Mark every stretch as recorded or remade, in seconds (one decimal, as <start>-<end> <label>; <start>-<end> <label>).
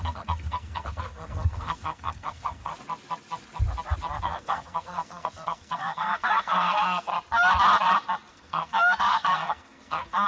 0.0-2.7 remade; 2.7-4.2 recorded; 4.2-7.1 remade; 7.1-8.3 recorded; 8.3-10.3 remade